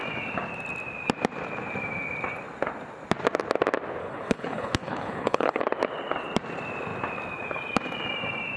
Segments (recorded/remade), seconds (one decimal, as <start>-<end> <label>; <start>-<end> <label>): 0.0-4.0 recorded; 4.0-5.6 remade; 5.6-8.6 recorded